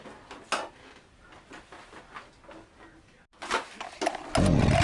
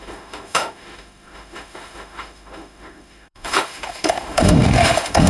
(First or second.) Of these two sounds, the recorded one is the first